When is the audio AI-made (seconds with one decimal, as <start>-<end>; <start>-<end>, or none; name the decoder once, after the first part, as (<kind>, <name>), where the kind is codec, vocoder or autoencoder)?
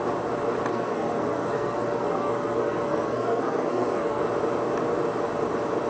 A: 0.7-4.2 (codec, SNAC)